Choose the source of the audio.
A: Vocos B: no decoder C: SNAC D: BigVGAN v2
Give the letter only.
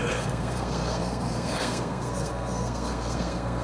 C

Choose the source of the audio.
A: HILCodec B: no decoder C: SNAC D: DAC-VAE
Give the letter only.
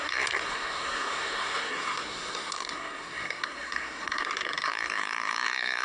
C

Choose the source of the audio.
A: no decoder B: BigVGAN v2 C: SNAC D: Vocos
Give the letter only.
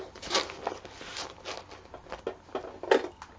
A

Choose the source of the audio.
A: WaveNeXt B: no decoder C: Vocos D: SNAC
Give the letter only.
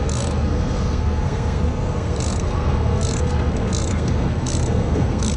D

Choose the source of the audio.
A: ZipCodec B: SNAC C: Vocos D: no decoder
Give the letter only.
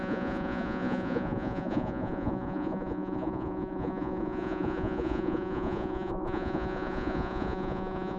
C